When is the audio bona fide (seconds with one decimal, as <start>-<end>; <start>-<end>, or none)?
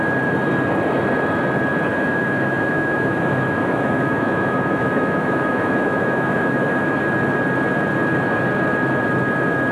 0.0-1.9; 7.0-9.7